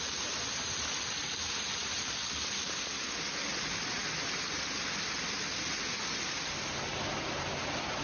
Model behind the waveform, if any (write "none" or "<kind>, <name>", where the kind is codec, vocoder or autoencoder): none